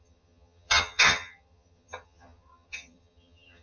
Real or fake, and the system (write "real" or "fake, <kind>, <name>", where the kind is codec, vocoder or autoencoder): fake, vocoder, HiFi-GAN